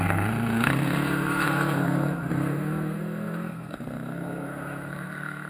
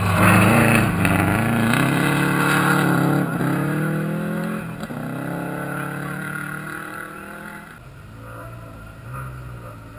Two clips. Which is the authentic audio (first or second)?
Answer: second